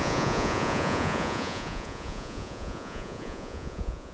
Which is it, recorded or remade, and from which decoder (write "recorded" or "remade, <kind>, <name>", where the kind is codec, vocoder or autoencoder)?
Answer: remade, vocoder, Vocos